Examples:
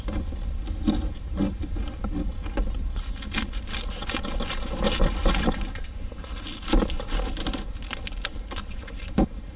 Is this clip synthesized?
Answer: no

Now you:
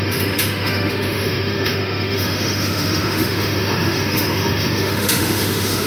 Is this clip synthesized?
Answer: yes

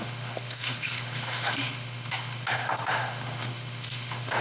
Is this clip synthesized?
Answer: yes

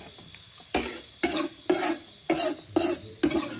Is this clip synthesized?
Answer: no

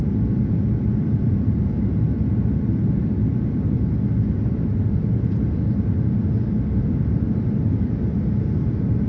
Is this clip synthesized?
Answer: no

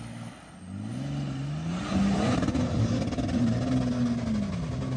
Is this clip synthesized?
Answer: no